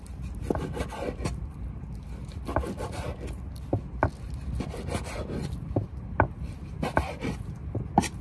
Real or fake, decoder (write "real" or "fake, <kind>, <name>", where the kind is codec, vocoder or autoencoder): real